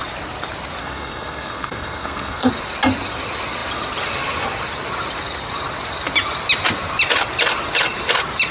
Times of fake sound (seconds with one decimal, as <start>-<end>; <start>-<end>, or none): 0.8-2.5